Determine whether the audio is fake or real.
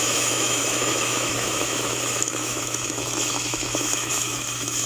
fake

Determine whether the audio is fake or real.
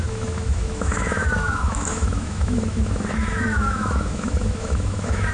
fake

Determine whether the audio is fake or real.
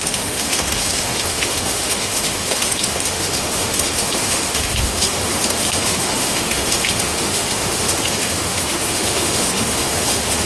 fake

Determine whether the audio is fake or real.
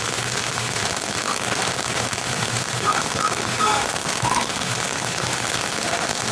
fake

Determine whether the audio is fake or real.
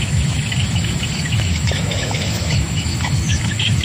fake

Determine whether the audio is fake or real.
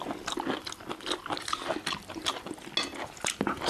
real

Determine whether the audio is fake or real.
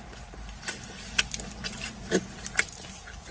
real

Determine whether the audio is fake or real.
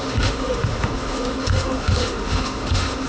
fake